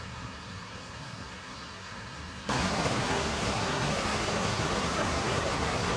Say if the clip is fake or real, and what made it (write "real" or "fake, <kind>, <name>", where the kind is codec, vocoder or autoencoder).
fake, codec, SNAC